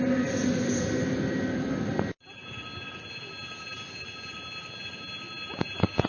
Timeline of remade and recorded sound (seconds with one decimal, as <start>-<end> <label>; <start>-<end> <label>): 0.0-6.1 recorded